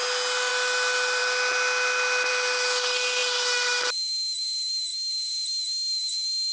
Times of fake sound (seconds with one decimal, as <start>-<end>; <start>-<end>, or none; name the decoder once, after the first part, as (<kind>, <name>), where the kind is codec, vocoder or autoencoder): none